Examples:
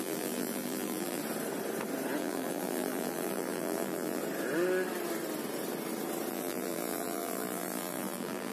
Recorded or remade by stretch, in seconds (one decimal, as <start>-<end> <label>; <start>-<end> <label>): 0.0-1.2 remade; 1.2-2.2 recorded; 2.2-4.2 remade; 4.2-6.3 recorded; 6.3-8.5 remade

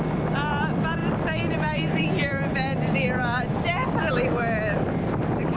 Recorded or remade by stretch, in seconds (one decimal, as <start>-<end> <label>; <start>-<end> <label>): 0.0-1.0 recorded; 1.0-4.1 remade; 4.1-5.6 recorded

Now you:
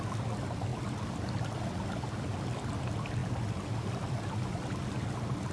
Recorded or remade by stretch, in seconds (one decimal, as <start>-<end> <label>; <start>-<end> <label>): 0.0-5.5 recorded

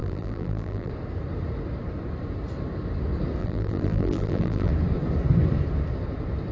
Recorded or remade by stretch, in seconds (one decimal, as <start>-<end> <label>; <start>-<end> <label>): 0.0-0.9 remade; 0.9-3.4 recorded; 3.4-4.7 remade; 4.7-6.5 recorded

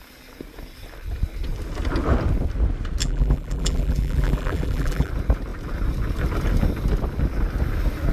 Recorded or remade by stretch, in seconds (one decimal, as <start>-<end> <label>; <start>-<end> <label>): 0.0-3.0 recorded; 3.0-5.1 remade; 5.1-8.1 recorded